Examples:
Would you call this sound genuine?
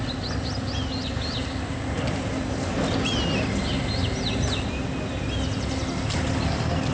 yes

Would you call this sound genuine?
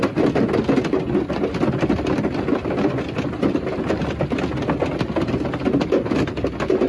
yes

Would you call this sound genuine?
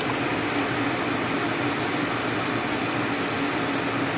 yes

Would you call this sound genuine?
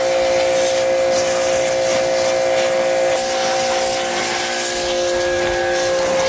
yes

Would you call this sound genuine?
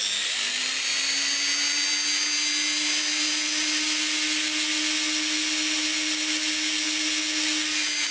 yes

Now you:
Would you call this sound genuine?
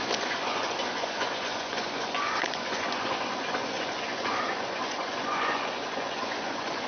no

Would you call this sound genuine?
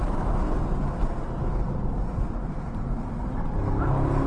yes